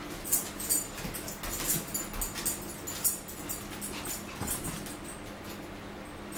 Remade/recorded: recorded